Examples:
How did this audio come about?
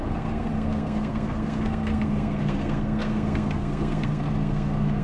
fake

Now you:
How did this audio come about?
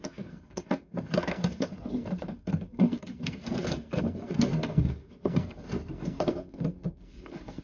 fake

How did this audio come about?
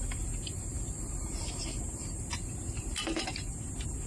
real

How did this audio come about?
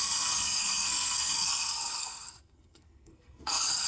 fake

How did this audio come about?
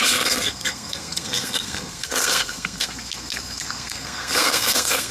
fake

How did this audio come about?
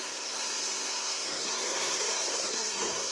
fake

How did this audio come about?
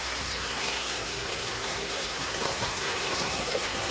fake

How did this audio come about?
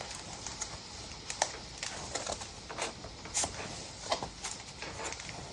real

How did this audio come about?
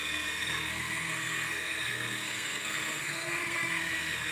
fake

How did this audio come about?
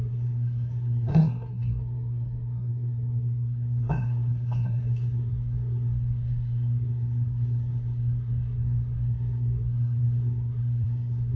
fake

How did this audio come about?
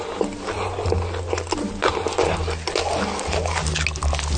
real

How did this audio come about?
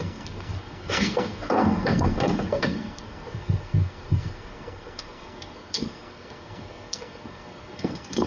fake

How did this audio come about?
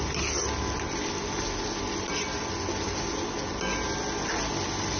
real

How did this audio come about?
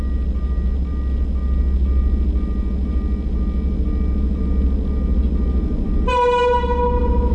real